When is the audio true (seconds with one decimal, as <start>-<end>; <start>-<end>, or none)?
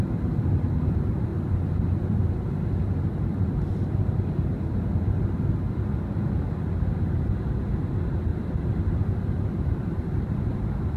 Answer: 0.0-8.3